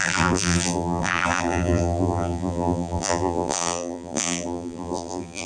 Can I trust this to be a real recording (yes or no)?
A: no